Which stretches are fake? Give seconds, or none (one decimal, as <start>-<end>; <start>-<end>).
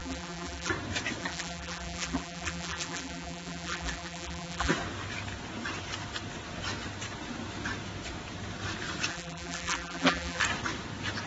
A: 0.0-0.7; 1.2-4.7; 9.1-10.4